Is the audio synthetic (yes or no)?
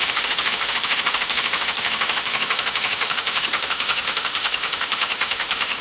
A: yes